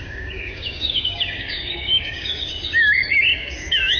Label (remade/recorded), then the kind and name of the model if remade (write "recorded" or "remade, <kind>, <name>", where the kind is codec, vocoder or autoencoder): remade, codec, DAC